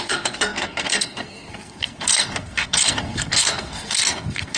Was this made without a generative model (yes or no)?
no